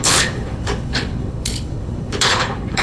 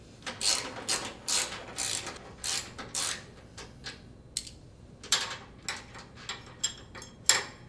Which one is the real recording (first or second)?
second